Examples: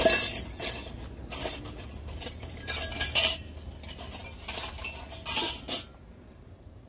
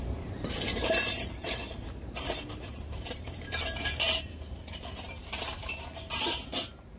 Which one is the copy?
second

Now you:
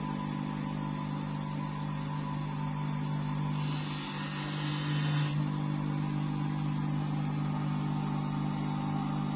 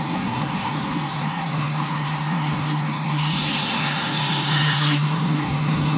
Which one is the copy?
second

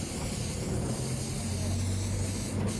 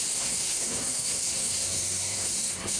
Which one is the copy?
second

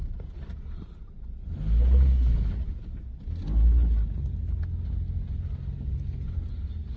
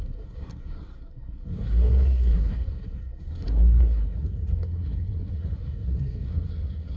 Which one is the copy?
second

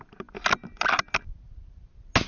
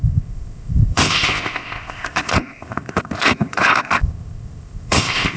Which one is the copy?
second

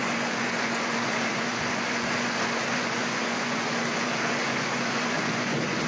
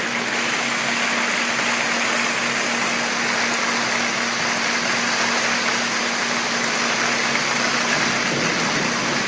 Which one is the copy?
first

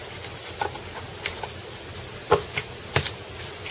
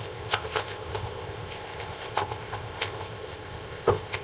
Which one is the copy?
second